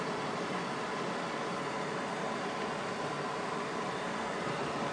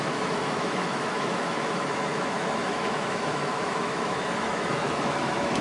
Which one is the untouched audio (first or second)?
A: first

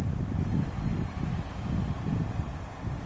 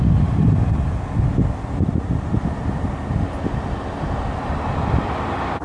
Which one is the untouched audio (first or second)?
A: second